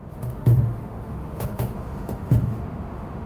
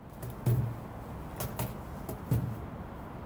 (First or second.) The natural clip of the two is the second